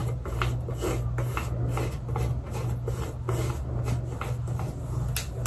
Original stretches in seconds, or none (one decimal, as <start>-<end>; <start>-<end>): 0.0-5.5